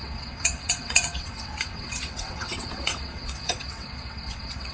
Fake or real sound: fake